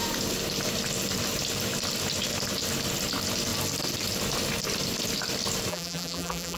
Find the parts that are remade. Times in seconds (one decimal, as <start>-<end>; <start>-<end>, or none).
5.7-6.6